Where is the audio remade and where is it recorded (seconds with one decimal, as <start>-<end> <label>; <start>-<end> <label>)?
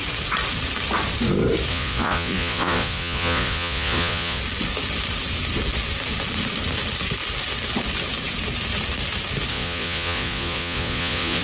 0.0-1.7 recorded; 1.7-4.4 remade; 4.4-9.5 recorded; 9.5-11.4 remade